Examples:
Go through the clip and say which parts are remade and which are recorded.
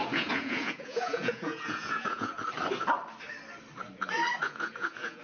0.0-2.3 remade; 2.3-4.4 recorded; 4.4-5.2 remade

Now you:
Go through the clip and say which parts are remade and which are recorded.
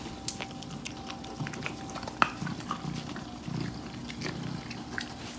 0.0-5.4 recorded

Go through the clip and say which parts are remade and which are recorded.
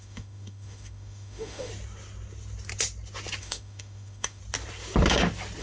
0.0-1.7 remade; 1.7-3.4 recorded; 3.4-4.4 remade; 4.4-5.6 recorded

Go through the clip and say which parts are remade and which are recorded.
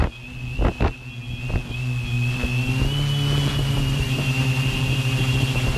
0.0-3.5 recorded; 3.5-5.8 remade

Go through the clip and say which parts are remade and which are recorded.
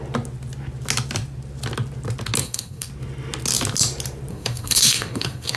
0.0-2.4 recorded; 2.4-2.9 remade; 2.9-4.3 recorded; 4.3-5.6 remade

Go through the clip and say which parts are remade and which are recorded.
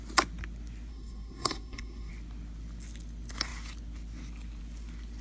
0.0-0.9 recorded; 0.9-2.1 remade; 2.1-5.2 recorded